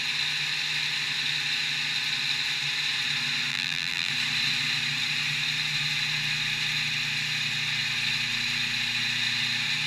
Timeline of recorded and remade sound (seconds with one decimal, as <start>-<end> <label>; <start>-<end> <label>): 0.0-3.5 recorded; 3.5-4.1 remade; 4.1-9.9 recorded